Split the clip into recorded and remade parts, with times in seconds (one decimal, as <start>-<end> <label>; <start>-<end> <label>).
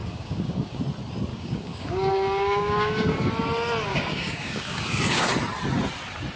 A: 0.0-0.8 remade; 0.8-1.3 recorded; 1.3-3.3 remade; 3.3-3.9 recorded; 3.9-5.3 remade; 5.3-6.4 recorded